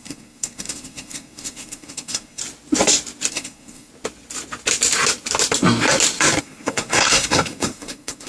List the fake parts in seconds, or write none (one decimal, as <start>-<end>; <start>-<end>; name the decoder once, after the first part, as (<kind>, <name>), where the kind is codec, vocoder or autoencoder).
0.0-2.4 (codec, SNAC); 3.3-3.9; 6.4-8.3